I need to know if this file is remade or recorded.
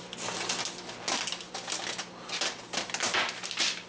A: recorded